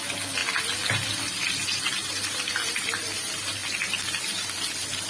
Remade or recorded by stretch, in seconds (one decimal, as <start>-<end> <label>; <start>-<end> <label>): 0.0-5.1 recorded